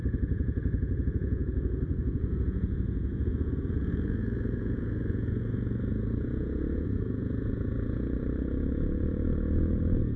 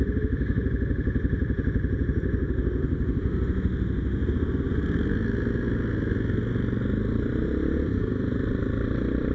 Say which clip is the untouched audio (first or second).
second